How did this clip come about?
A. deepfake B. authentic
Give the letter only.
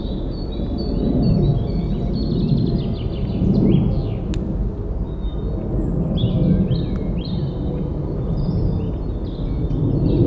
B